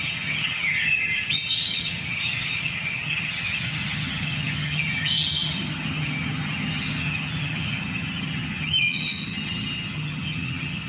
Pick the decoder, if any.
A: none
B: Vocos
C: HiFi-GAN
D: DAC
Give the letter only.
C